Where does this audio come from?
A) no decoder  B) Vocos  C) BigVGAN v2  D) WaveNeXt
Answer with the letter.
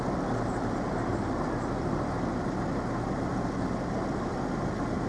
A